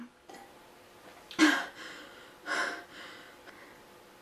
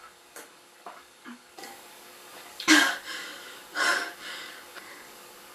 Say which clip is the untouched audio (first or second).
first